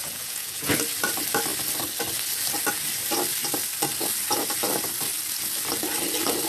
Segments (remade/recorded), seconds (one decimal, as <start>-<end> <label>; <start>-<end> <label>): 0.0-0.7 remade; 0.7-6.5 recorded